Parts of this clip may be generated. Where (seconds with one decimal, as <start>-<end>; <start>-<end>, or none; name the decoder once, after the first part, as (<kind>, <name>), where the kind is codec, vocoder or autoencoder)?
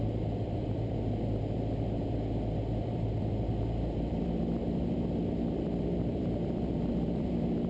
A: 0.0-7.7 (vocoder, BigVGAN v2)